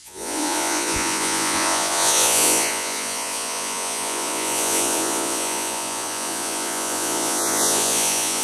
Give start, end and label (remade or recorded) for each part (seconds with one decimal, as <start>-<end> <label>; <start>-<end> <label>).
0.0-8.4 remade